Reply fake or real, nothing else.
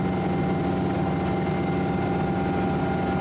real